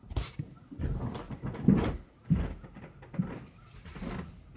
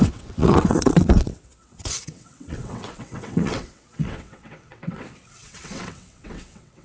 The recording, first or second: first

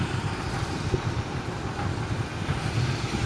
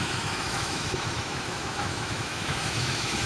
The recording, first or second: first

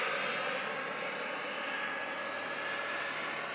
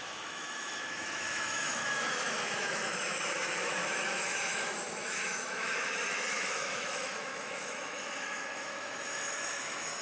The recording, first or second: first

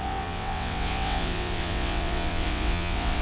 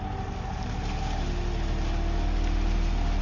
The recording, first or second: second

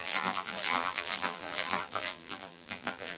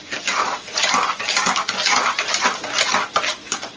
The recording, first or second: second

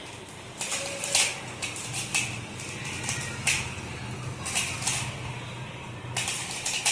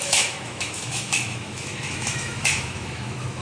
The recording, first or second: first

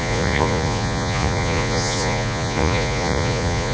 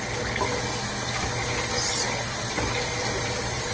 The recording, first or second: second